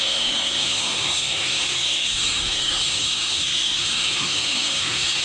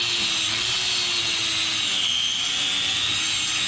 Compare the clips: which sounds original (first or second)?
second